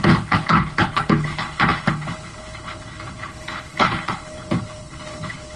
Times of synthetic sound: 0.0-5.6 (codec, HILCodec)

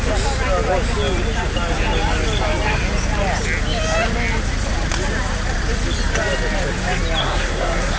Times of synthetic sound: 7.2-8.0 (codec, SNAC)

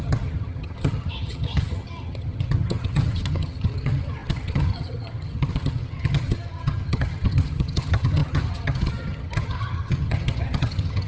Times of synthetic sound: 0.0-11.1 (vocoder, HiFi-GAN)

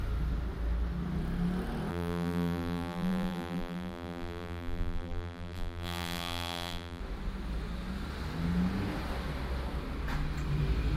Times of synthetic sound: 1.9-7.0 (vocoder, BigVGAN v2)

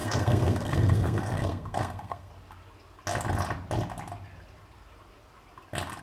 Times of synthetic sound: 0.0-2.3 (codec, SNAC)

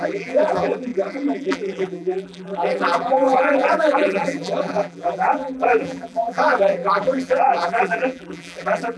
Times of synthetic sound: 0.0-9.0 (vocoder, BigVGAN v2)

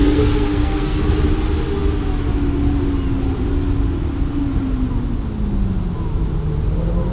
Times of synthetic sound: 0.0-1.0 (codec, SNAC)

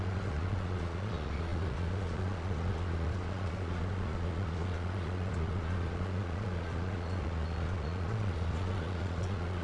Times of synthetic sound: 0.0-9.6 (vocoder, Vocos)